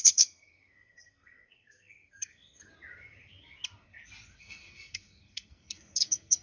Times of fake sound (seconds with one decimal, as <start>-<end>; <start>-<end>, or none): 0.0-2.7; 4.4-6.4